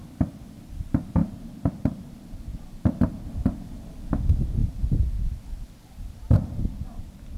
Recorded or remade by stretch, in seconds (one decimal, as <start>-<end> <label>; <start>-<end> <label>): 0.0-1.2 recorded; 1.2-3.3 remade; 3.3-4.6 recorded; 4.6-7.0 remade; 7.0-7.4 recorded